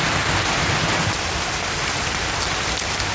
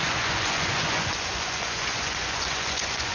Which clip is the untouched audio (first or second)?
first